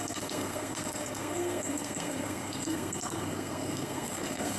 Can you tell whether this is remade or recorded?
remade